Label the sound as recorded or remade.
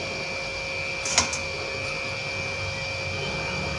recorded